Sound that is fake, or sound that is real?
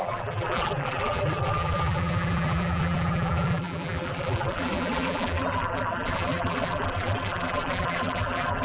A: fake